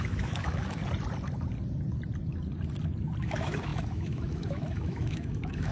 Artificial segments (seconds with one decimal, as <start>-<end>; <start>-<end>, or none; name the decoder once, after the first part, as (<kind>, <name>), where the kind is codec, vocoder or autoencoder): 0.0-0.8 (autoencoder, DAC-VAE); 3.2-5.7